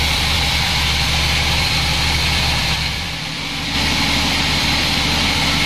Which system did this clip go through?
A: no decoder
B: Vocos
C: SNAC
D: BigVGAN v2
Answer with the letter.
D